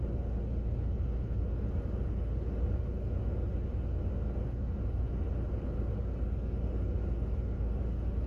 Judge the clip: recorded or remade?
recorded